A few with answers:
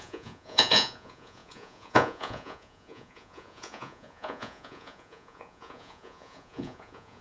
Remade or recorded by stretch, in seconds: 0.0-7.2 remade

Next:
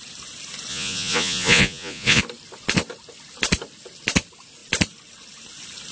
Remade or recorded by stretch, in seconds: 0.0-0.7 recorded; 0.7-2.2 remade; 2.2-5.9 recorded

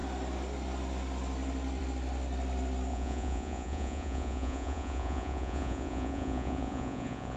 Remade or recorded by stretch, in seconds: 0.0-2.9 recorded; 2.9-7.4 remade

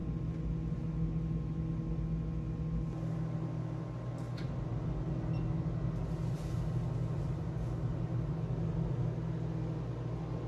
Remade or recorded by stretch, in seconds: 0.0-10.5 recorded